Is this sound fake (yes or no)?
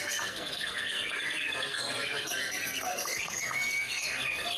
yes